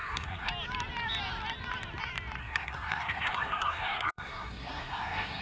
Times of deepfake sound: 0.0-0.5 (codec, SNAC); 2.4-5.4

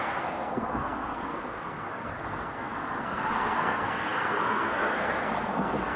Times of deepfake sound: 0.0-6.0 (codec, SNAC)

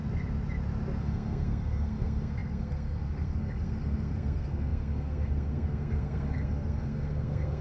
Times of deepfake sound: 1.0-7.6 (codec, SNAC)

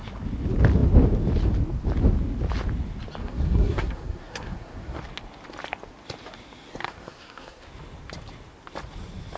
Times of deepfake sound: 3.2-5.0 (codec, SNAC); 6.7-7.7

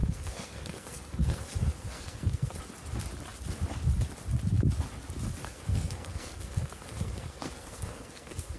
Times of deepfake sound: 0.0-2.6 (codec, SNAC); 5.4-8.6

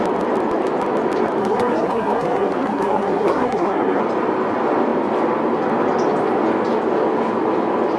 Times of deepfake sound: 1.4-4.0 (codec, SNAC)

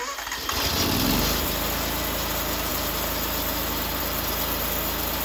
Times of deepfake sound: none

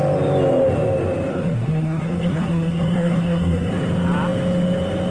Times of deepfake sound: 1.3-3.7 (codec, SNAC)